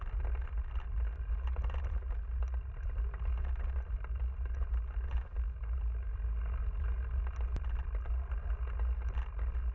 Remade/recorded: recorded